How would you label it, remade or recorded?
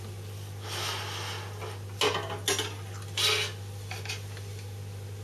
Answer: recorded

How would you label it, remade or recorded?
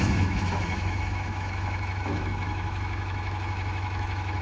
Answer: remade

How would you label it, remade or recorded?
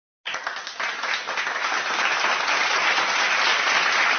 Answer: recorded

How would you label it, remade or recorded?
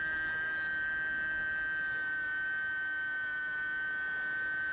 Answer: recorded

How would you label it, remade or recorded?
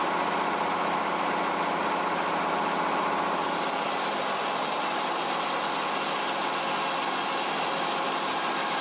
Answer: recorded